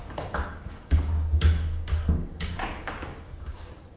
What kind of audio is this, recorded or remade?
remade